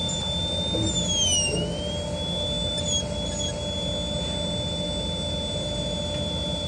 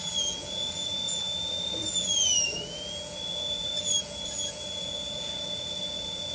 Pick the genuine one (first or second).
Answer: first